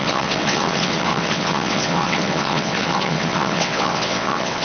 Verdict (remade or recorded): remade